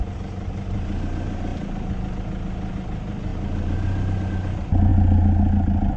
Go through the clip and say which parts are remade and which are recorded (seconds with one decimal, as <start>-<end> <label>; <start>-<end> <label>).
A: 0.0-6.0 recorded